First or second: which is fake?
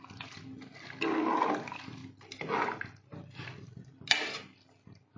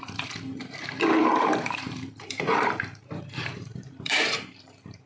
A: second